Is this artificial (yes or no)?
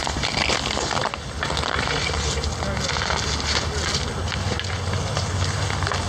no